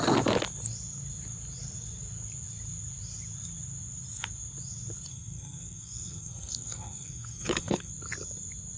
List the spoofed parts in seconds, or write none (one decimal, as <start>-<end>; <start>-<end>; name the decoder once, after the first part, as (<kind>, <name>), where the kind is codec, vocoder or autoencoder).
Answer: 5.1-7.9 (codec, SNAC)